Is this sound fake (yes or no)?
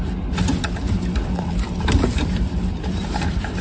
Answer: yes